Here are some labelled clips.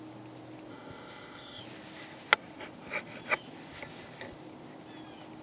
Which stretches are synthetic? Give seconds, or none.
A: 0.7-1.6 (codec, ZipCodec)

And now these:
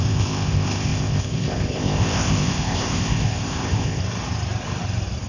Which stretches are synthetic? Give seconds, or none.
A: 0.0-4.0 (codec, ZipCodec)

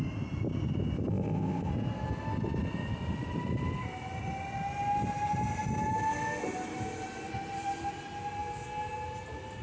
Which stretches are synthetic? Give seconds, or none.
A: 1.1-1.7 (codec, ZipCodec)

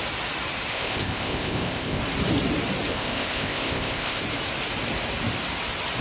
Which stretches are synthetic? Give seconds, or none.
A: 0.7-2.0 (codec, ZipCodec); 2.9-4.2

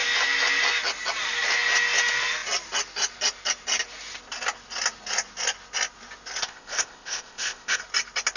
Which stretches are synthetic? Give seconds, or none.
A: 6.4-7.8 (codec, ZipCodec)